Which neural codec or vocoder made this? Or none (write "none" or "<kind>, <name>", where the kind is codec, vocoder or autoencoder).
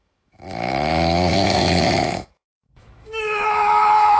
autoencoder, DAC-VAE